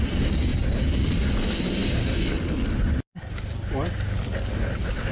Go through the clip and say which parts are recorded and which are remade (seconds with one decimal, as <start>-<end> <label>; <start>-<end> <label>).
0.0-5.1 recorded